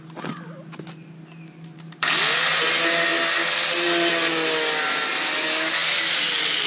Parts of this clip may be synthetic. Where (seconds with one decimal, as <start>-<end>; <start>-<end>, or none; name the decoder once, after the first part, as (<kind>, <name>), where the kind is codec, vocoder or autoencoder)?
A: 1.0-2.2 (vocoder, BigVGAN v2)